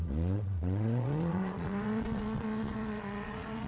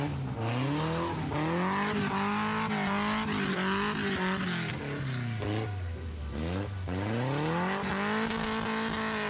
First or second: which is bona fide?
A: second